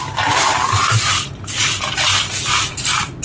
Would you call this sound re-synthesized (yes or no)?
no